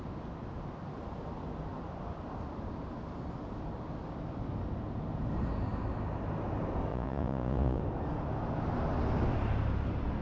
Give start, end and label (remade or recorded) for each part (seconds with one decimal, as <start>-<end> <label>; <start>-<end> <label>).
0.0-6.9 recorded; 6.9-7.8 remade; 7.8-10.2 recorded